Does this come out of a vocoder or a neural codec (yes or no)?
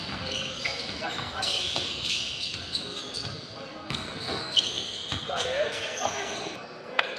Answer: yes